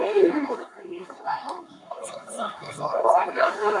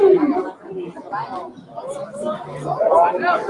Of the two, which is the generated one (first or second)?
first